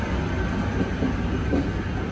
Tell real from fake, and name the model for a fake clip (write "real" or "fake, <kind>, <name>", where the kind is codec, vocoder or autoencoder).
real